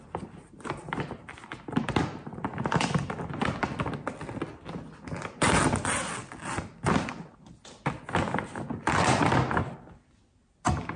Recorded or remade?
recorded